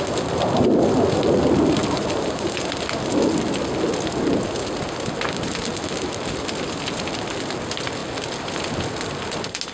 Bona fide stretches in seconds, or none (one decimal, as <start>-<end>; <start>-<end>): 0.0-1.8; 2.6-9.7